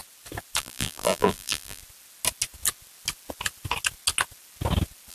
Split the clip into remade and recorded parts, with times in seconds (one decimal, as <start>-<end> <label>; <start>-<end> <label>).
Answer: 0.0-0.6 recorded; 0.6-1.8 remade; 1.8-5.1 recorded